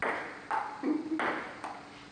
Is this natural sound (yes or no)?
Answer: yes